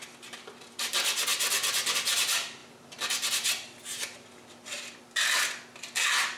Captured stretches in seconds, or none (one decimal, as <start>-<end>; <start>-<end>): 0.0-2.6; 5.0-6.4